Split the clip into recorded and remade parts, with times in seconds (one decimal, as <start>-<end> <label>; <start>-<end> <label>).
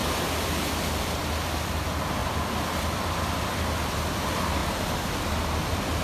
0.0-2.2 recorded; 2.2-3.4 remade; 3.4-6.0 recorded